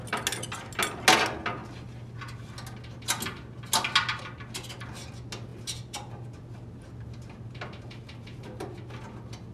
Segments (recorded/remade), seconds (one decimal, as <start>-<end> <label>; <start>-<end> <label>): 0.0-9.5 recorded